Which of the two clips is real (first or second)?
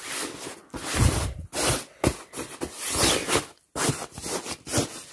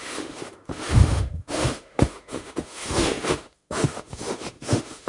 first